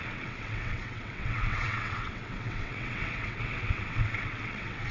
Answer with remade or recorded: remade